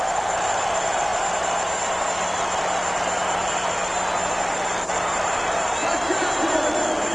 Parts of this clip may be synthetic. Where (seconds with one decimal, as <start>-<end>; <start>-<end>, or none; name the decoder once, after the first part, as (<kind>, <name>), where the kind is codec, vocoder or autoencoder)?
none